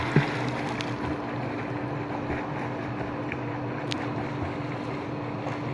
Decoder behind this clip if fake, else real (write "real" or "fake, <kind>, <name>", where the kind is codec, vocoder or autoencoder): real